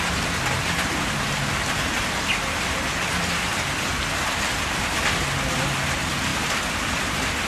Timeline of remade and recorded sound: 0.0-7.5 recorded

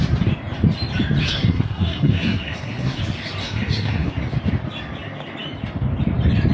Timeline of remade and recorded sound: 0.0-1.2 recorded; 1.2-3.0 remade; 3.0-3.4 recorded; 3.4-4.1 remade; 4.1-6.5 recorded

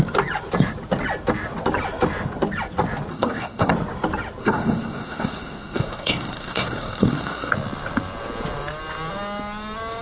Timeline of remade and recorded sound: 0.0-3.1 recorded; 3.1-3.7 remade; 3.7-4.4 recorded; 4.4-7.5 remade; 7.5-10.0 recorded